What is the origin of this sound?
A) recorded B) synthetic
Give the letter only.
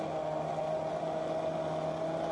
A